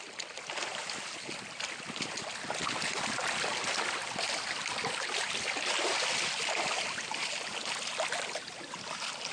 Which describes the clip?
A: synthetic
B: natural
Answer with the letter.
B